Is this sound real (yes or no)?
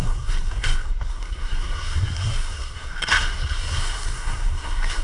no